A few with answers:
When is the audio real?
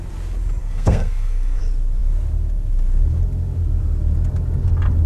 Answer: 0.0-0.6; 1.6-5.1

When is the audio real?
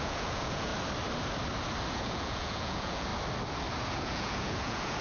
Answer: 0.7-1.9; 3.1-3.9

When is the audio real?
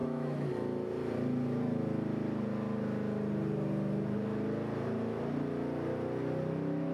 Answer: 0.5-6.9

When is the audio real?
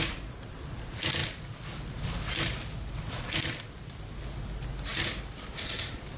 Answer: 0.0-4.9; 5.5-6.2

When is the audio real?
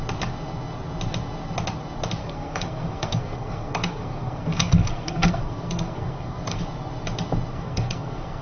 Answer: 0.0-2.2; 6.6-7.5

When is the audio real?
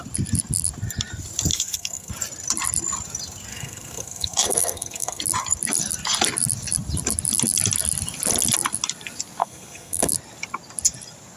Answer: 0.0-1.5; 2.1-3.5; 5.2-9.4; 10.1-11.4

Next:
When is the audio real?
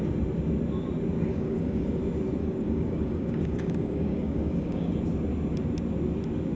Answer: 0.0-1.3; 2.0-2.4; 4.9-6.5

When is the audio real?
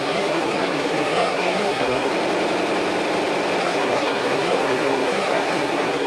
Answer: 2.1-3.6